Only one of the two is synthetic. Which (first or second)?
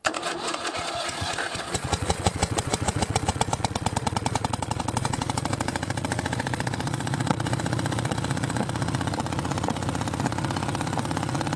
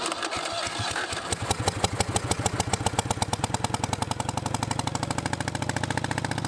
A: first